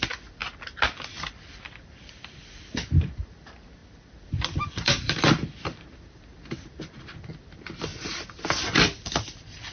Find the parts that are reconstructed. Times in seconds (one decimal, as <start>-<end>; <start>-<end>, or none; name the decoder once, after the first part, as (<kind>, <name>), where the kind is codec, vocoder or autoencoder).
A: 0.0-0.4 (vocoder, BigVGAN v2); 1.3-7.9; 8.6-9.7